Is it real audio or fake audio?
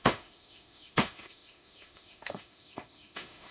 fake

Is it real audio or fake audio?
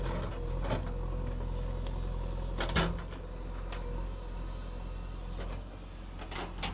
real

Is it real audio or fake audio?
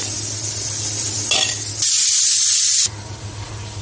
real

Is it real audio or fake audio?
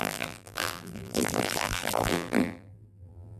fake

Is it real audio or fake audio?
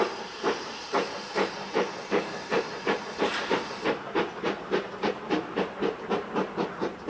fake